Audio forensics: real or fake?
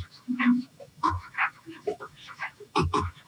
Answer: fake